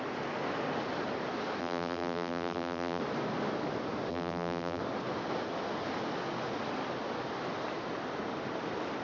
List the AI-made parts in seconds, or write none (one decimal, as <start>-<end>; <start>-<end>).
1.6-3.0; 4.1-4.8